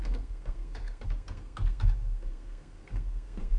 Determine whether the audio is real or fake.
fake